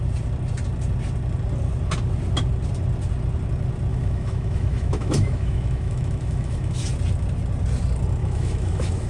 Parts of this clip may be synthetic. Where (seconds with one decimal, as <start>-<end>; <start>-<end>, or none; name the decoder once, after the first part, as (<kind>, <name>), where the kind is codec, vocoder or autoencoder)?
3.9-6.8 (autoencoder, DAC-VAE); 8.2-9.1